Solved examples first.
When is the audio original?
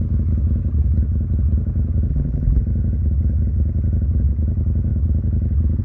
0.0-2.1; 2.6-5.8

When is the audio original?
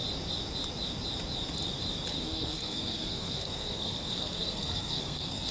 0.0-2.1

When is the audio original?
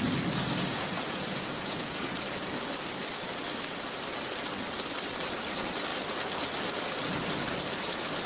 0.0-0.7; 2.0-8.3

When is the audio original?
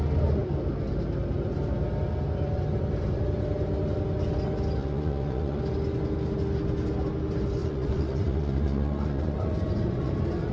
0.0-4.8; 5.6-7.6; 10.1-10.5